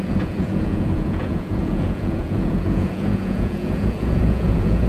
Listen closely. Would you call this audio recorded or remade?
remade